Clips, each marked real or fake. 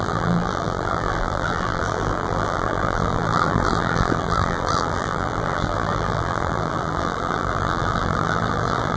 fake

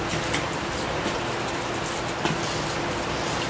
real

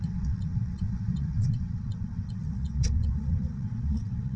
fake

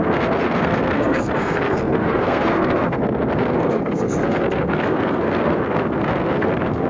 fake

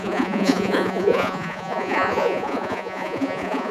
fake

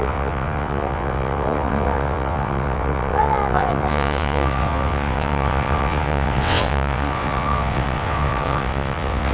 fake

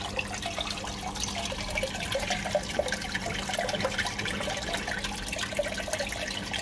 real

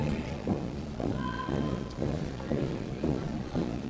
fake